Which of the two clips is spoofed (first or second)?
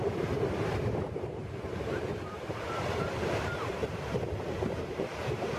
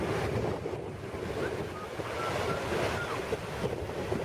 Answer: first